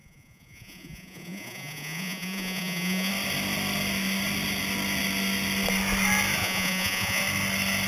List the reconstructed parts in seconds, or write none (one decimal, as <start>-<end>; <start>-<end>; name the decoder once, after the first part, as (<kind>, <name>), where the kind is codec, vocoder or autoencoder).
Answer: 0.0-3.1 (vocoder, Vocos); 6.4-7.2